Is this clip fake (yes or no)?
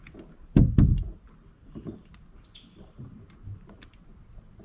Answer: no